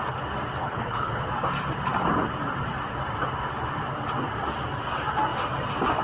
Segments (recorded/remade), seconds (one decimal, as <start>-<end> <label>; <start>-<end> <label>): 0.0-0.6 recorded; 0.6-1.3 remade; 1.3-6.0 recorded